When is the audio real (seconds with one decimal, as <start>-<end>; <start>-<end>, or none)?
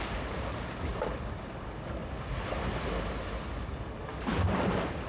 0.0-5.1